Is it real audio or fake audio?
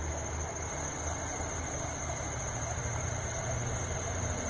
real